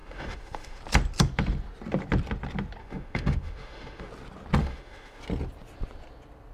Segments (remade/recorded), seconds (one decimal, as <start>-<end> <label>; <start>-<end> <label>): 0.0-0.8 remade; 0.8-2.8 recorded; 2.8-4.1 remade; 4.1-4.6 recorded; 4.6-5.2 remade; 5.2-6.5 recorded